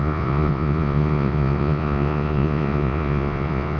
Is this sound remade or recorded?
remade